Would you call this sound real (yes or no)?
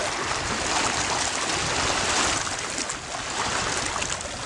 yes